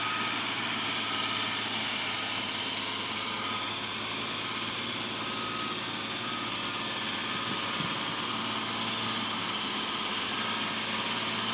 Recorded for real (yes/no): yes